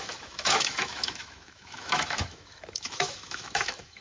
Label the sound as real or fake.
fake